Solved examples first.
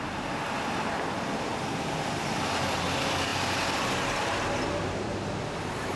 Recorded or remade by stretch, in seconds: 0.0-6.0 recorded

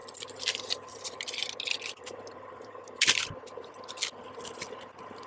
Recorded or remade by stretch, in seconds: 0.0-3.2 remade; 3.2-5.3 recorded

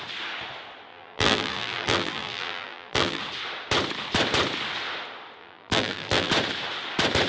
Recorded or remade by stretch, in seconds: 0.0-0.9 recorded; 0.9-3.2 remade; 3.2-5.4 recorded; 5.4-6.3 remade; 6.3-7.3 recorded

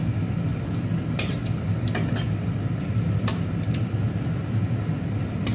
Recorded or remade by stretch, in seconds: 0.0-5.5 recorded

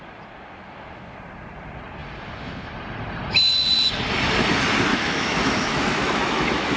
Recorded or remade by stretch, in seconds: 0.0-4.9 recorded; 4.9-6.8 remade

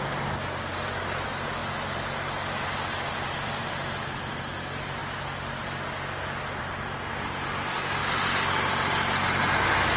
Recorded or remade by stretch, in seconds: 0.0-10.0 recorded

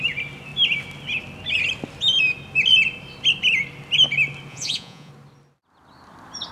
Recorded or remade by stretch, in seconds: 0.0-4.5 recorded; 4.5-5.1 remade; 5.1-6.5 recorded

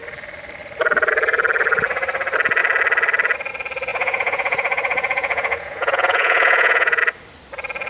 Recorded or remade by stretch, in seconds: 0.0-3.9 recorded; 3.9-7.0 remade; 7.0-7.9 recorded